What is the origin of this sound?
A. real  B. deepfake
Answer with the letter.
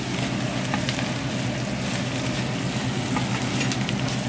A